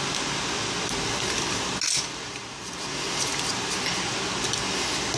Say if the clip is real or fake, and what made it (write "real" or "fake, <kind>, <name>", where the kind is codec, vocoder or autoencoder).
real